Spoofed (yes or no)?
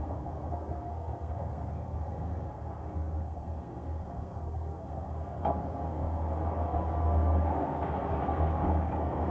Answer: yes